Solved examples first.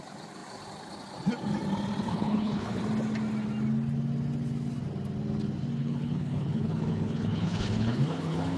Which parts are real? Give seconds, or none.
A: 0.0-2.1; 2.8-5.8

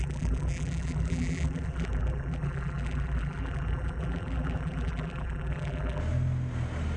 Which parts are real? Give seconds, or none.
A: 6.0-7.0

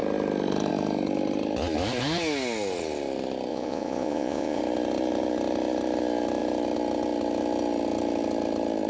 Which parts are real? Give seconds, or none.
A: 0.0-3.5; 4.6-8.9

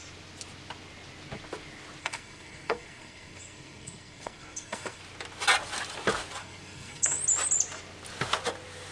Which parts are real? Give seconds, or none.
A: 0.0-2.0; 5.0-6.4; 7.2-8.9

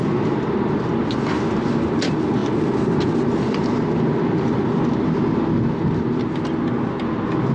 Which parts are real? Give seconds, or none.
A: 0.0-7.5

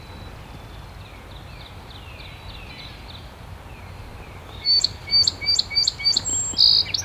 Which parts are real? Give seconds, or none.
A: 0.0-4.4; 5.0-7.0

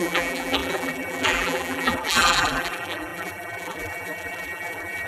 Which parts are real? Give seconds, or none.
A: none